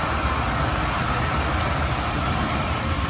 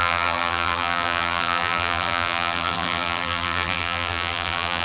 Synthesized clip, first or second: second